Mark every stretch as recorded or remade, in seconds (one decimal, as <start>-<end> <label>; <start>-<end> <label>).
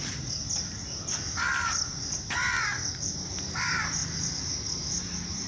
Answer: 0.0-5.5 recorded